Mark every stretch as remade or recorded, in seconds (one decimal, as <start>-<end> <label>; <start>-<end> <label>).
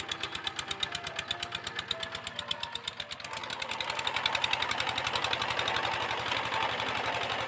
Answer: 0.0-7.5 recorded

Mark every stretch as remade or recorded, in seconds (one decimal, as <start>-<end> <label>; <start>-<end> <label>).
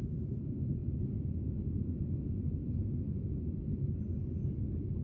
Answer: 0.0-5.0 recorded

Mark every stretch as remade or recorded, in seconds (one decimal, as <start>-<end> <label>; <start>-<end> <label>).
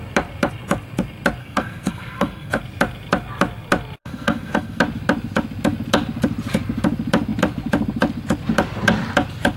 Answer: 0.0-1.4 recorded; 1.4-2.6 remade; 2.6-4.0 recorded; 4.0-4.8 remade; 4.8-9.6 recorded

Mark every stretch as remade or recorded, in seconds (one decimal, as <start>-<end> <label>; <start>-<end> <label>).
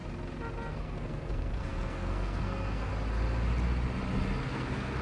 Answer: 0.0-0.7 recorded; 0.7-2.9 remade; 2.9-4.4 recorded; 4.4-5.0 remade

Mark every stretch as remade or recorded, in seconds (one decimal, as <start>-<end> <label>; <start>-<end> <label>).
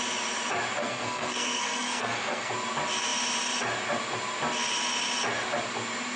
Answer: 0.0-0.8 recorded; 0.8-2.5 remade; 2.5-6.2 recorded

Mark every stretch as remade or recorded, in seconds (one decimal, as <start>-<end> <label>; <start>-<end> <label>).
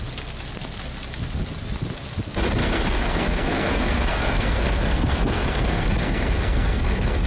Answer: 0.0-2.6 recorded; 2.6-7.3 remade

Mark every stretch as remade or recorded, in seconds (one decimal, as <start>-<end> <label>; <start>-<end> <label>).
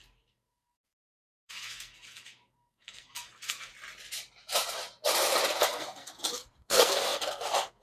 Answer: 0.0-3.7 remade; 3.7-5.6 recorded; 5.6-7.8 remade